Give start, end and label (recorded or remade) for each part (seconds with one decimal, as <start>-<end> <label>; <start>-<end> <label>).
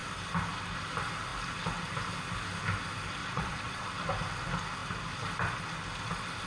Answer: 0.0-3.2 recorded; 3.2-3.9 remade; 3.9-6.5 recorded